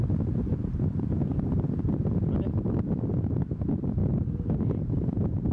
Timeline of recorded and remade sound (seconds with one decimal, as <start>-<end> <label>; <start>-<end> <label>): 0.0-5.5 recorded